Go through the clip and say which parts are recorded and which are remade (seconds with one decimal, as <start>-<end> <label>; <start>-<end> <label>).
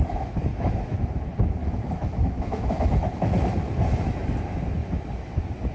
0.0-5.7 remade